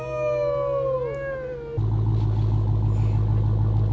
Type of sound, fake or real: real